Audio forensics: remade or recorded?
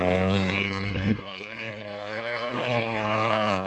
remade